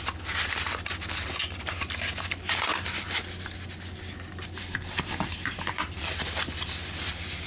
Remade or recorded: recorded